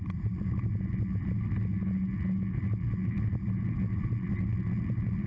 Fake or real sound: real